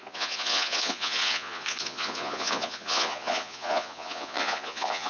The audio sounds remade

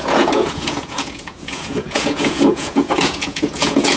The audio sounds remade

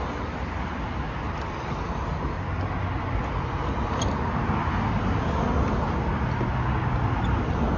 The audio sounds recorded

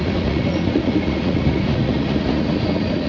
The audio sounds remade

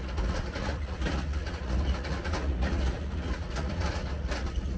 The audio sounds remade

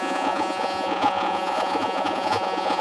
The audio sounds remade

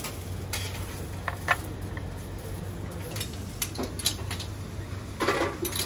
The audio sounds recorded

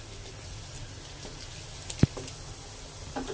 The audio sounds recorded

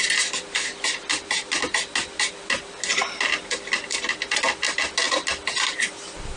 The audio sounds recorded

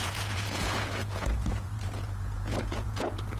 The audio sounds remade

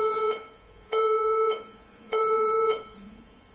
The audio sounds remade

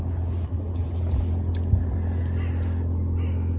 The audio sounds recorded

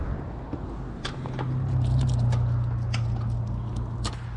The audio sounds recorded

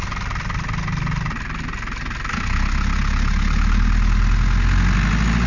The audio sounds recorded